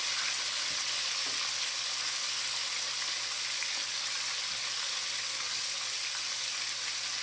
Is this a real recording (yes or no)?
yes